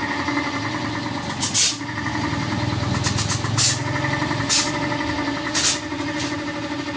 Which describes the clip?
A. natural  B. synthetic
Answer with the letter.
A